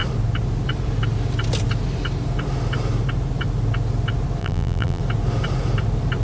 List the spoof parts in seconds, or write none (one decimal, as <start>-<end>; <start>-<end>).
4.4-5.0